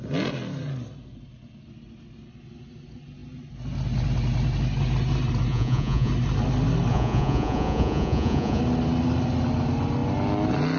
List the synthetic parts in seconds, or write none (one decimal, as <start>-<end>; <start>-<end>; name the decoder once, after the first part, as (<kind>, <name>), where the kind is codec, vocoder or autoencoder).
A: 5.5-6.1 (vocoder, Vocos); 6.9-8.6